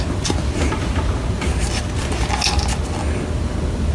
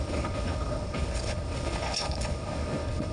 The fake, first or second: second